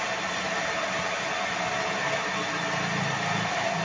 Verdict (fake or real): real